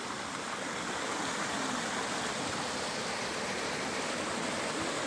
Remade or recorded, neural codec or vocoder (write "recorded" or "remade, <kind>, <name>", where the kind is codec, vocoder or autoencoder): recorded